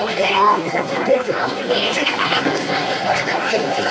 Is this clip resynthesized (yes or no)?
yes